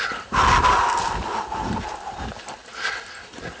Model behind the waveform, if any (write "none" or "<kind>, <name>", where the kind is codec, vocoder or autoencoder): none